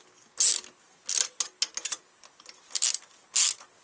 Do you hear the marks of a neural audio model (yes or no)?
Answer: no